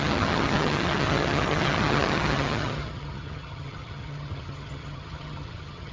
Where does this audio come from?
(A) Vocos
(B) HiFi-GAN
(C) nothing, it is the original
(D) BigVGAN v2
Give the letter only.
B